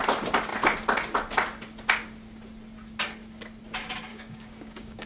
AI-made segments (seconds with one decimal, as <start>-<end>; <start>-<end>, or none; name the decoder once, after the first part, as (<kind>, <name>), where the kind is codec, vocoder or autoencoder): 4.1-5.1 (codec, DAC)